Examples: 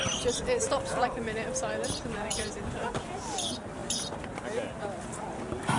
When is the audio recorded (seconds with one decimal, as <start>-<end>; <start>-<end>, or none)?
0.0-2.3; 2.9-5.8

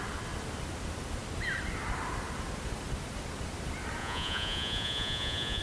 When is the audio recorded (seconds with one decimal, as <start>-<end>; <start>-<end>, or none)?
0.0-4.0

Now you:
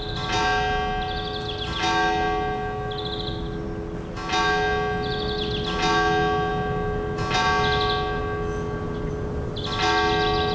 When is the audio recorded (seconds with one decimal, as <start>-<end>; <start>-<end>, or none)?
0.0-10.5

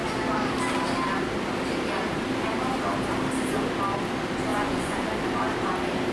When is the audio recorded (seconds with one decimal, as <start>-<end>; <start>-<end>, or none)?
0.0-4.5; 5.1-6.1

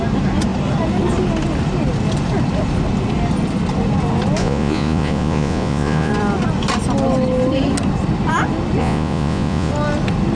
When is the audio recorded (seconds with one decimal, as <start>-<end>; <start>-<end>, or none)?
0.0-4.4; 6.1-8.8; 9.7-10.3

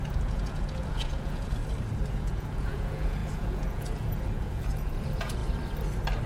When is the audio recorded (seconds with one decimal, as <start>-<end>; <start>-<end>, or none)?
1.6-2.1; 5.4-6.3